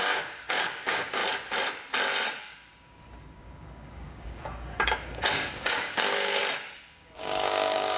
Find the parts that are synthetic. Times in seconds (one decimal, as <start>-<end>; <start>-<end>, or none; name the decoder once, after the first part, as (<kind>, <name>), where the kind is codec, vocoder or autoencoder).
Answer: 0.0-1.2 (codec, DAC); 2.4-6.4; 6.9-8.0